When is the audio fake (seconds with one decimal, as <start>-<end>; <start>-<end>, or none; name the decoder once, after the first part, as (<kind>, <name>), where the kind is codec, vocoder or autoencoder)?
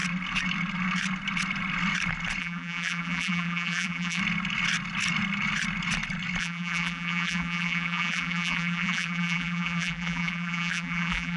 2.4-4.2 (vocoder, BigVGAN v2); 6.4-11.4